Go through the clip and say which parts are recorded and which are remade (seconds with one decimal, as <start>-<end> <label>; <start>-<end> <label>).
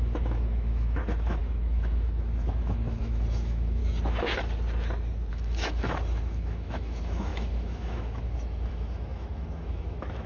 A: 0.0-3.8 remade; 3.8-5.3 recorded; 5.3-10.3 remade